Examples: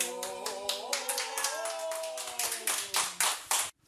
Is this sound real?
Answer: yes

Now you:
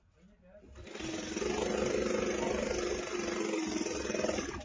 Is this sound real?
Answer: yes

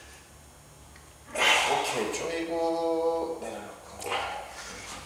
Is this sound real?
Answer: yes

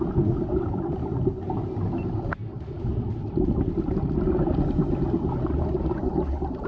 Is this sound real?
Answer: yes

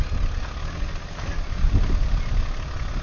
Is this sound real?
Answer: yes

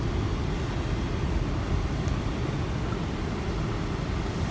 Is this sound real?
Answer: yes